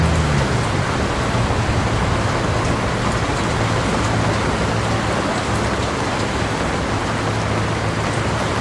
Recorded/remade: recorded